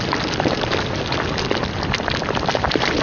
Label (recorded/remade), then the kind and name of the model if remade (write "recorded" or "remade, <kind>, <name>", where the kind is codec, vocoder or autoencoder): remade, vocoder, BigVGAN v2